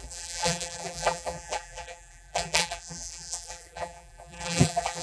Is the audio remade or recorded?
remade